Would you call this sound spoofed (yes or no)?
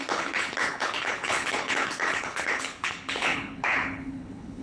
yes